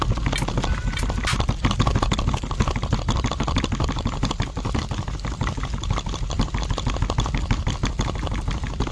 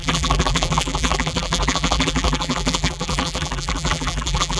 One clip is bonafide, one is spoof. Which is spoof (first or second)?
second